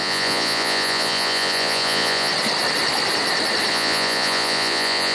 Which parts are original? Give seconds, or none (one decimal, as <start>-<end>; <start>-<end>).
2.3-3.7